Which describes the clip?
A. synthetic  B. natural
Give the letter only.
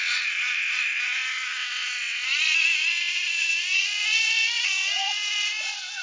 A